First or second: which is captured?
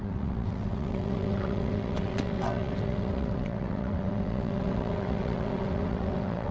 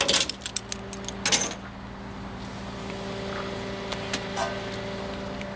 second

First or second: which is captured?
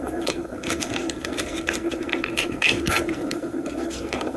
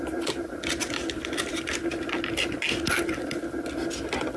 second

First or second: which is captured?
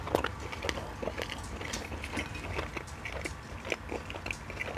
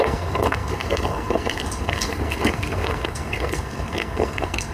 first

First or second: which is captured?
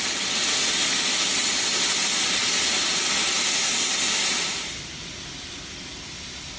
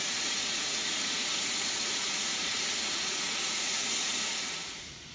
first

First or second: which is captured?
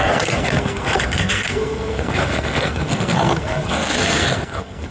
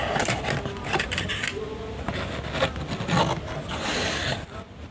second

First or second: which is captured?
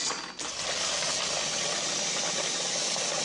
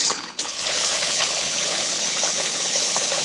first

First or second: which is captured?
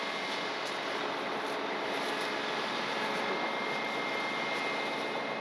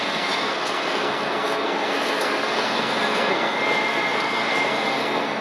first